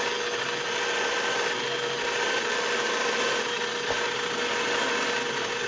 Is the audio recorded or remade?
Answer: recorded